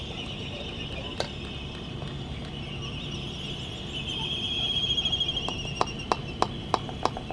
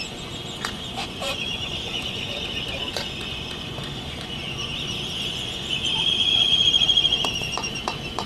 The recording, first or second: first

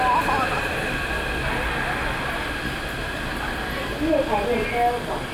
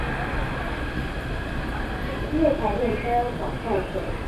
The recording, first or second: first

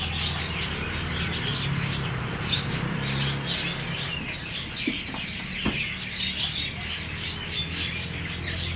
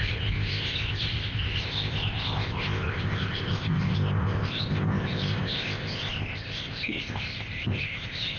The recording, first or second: first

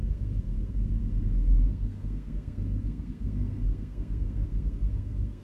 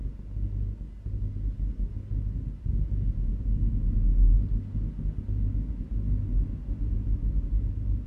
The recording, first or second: second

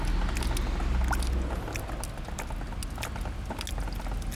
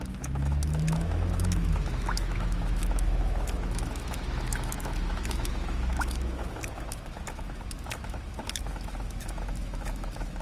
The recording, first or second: first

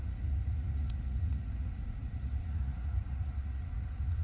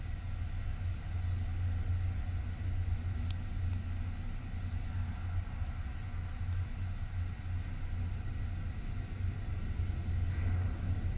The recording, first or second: second